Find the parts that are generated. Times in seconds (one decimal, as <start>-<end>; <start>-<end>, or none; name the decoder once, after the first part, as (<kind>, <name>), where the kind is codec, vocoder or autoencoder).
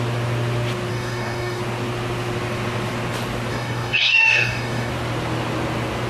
0.9-1.6 (codec, DAC); 3.5-4.9